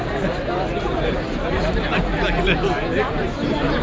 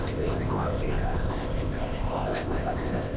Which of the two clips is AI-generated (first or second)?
second